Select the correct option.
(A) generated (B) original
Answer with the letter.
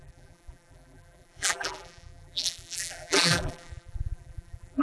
A